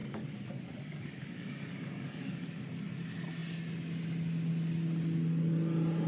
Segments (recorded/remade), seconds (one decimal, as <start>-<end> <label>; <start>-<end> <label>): 0.0-2.6 remade; 2.6-6.1 recorded